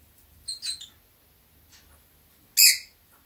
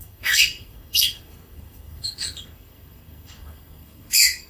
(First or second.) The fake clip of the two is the second